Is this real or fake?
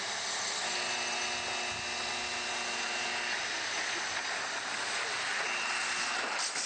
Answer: real